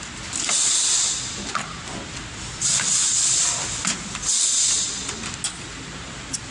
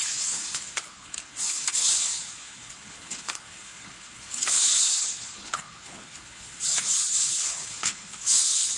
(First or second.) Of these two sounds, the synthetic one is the second